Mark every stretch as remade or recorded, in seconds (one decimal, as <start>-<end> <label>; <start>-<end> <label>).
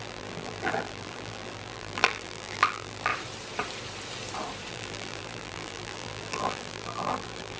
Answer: 0.0-3.1 remade; 3.1-4.7 recorded; 4.7-7.6 remade